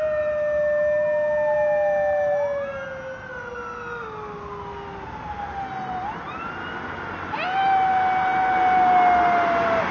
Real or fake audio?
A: real